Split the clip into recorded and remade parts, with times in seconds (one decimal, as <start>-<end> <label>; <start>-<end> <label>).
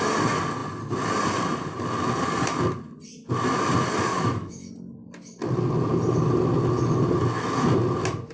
0.0-4.1 recorded; 4.1-4.7 remade; 4.7-8.3 recorded